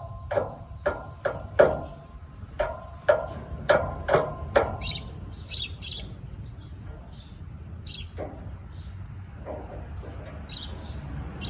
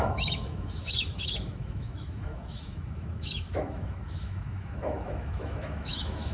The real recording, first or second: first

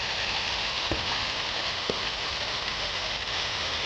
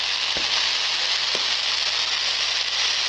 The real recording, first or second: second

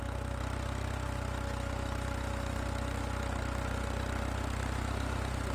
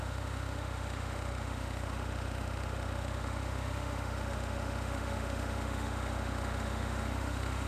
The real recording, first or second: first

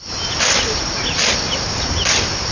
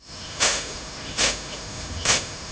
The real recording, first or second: first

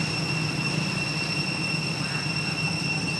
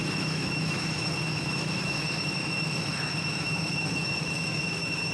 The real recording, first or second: first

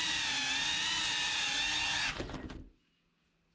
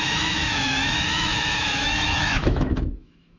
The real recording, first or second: first